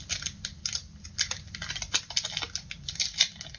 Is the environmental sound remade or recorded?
recorded